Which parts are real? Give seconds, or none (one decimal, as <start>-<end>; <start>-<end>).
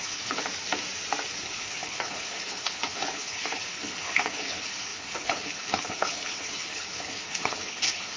0.4-1.4